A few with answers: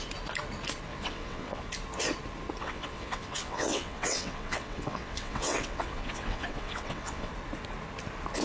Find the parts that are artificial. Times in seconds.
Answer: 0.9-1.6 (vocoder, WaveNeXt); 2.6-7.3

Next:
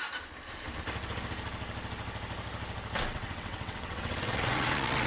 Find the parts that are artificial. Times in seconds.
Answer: 3.1-5.1 (vocoder, WaveNeXt)

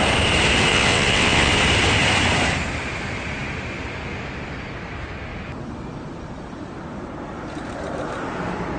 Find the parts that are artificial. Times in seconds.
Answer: 0.7-1.5 (vocoder, WaveNeXt)

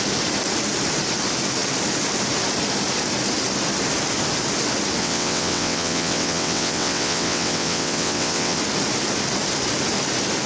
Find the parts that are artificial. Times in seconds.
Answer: 5.0-8.6 (vocoder, WaveNeXt)

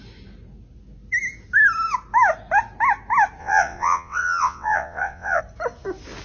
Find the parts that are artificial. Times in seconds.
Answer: 3.4-5.4 (vocoder, WaveNeXt)